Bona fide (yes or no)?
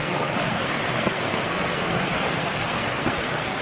no